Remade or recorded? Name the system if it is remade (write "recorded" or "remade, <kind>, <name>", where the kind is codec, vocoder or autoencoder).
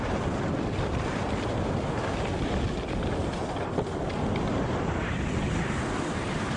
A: recorded